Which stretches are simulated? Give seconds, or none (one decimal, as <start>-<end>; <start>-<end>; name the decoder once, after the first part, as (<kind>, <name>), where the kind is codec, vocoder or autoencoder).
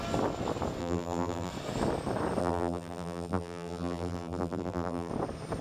0.8-1.5 (vocoder, BigVGAN v2); 2.4-5.1